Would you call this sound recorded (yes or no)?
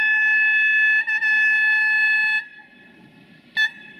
yes